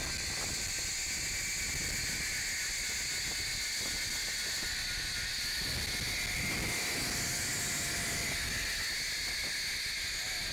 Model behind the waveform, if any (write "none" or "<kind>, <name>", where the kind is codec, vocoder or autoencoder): none